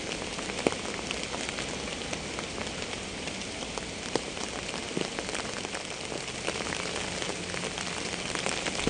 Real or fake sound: real